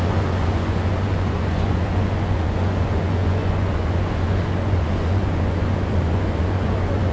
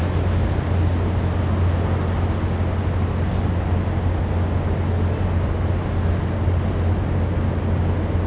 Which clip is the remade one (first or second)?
first